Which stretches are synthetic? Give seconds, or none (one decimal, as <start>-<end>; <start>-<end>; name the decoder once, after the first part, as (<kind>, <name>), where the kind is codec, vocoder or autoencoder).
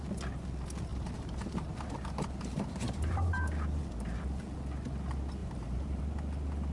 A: 0.9-3.3 (vocoder, BigVGAN v2); 5.4-6.0